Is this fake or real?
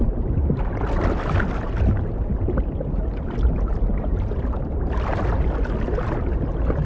real